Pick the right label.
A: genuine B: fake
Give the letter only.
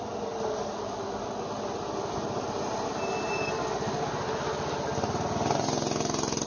A